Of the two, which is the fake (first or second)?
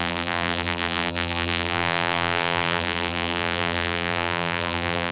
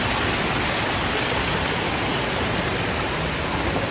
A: first